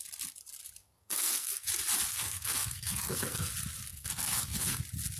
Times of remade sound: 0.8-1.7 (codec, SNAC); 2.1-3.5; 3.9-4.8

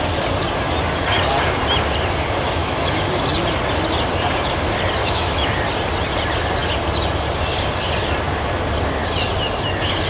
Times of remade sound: 2.6-3.2 (autoencoder, DAC-VAE); 5.0-5.5

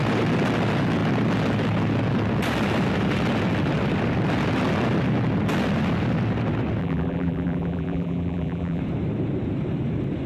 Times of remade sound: 6.8-8.8 (vocoder, BigVGAN v2)

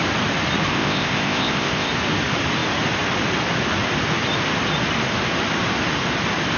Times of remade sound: 0.7-1.9 (codec, ZipCodec)

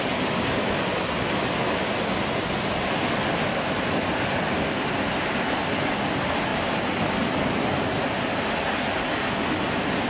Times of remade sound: none